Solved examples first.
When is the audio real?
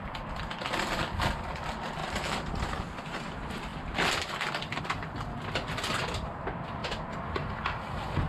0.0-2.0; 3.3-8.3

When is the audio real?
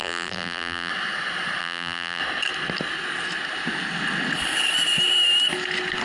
0.9-1.6; 2.2-6.0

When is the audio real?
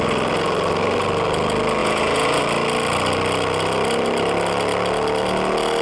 0.0-1.8; 2.4-5.8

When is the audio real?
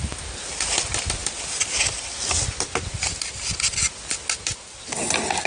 0.0-5.5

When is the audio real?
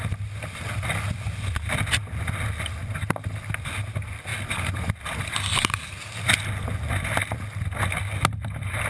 0.0-8.9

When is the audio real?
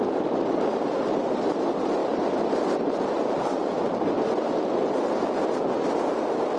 0.0-6.6